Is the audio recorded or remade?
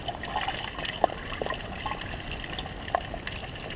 recorded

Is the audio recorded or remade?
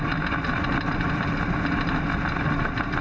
recorded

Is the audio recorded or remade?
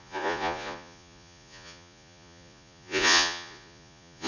remade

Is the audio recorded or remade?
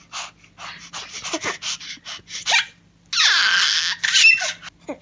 recorded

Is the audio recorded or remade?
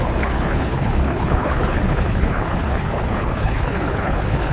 remade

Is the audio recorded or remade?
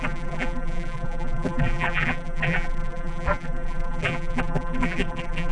remade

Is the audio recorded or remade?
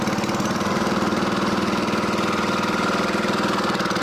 recorded